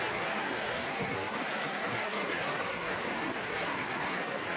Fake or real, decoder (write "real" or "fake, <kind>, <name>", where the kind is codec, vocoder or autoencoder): fake, codec, SNAC